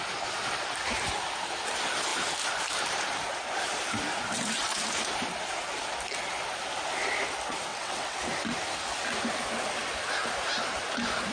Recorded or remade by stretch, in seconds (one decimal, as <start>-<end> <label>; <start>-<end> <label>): 0.0-7.7 recorded; 7.7-8.2 remade; 8.2-11.3 recorded